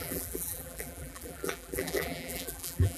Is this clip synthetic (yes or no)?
yes